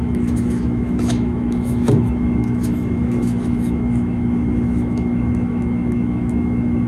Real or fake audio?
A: fake